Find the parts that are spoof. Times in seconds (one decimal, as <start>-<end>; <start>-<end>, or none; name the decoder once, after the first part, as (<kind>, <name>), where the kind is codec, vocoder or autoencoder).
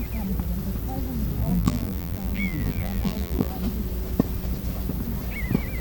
1.4-3.5 (vocoder, BigVGAN v2)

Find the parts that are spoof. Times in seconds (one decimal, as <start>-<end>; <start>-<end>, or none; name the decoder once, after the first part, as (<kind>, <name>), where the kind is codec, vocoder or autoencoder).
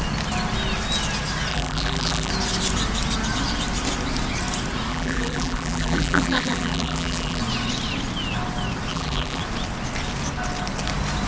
1.5-2.3 (vocoder, BigVGAN v2); 4.9-7.4; 8.9-9.4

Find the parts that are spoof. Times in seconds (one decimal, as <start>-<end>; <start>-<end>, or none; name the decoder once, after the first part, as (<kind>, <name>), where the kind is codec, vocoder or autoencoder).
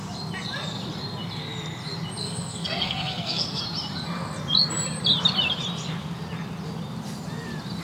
2.2-3.6 (codec, SNAC)